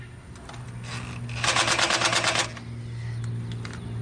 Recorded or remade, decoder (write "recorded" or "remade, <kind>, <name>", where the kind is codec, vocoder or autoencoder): recorded